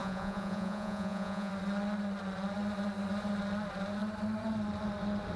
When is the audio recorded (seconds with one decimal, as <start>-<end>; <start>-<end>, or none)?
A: 1.5-5.4

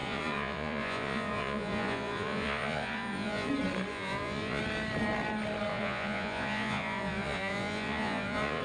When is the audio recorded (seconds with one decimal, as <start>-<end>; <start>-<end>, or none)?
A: 3.5-3.9; 4.6-5.7

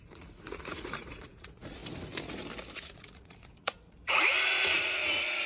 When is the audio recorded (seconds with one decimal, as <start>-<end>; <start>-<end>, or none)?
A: 1.8-2.7

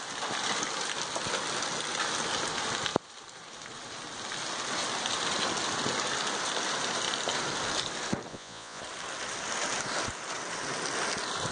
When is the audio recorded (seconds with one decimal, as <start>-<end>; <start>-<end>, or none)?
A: 0.0-8.3; 8.8-11.5

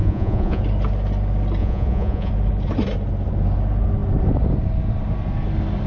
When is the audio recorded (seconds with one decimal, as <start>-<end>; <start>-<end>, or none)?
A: 0.6-1.6; 2.3-5.9

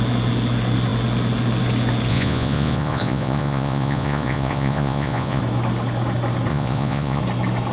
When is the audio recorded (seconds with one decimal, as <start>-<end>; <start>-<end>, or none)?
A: 0.0-2.1; 5.4-6.5; 7.2-7.7